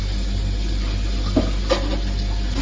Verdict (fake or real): real